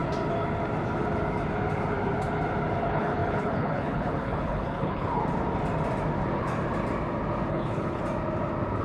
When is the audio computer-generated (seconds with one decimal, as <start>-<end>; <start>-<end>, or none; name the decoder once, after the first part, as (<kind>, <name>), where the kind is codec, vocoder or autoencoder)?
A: 2.8-5.2 (codec, HILCodec); 7.5-8.0